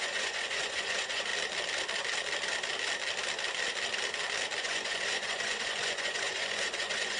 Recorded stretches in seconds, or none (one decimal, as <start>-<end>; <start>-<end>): 1.3-4.6